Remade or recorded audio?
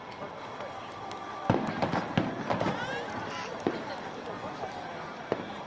recorded